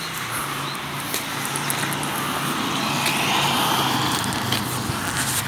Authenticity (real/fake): real